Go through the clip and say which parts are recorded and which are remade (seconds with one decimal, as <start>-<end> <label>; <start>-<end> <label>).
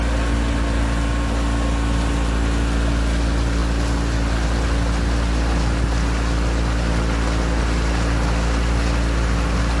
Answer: 0.0-9.8 recorded